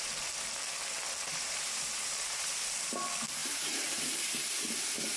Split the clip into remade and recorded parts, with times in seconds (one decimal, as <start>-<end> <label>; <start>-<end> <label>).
0.0-1.3 recorded; 1.3-2.9 remade; 2.9-3.4 recorded; 3.4-4.4 remade; 4.4-5.2 recorded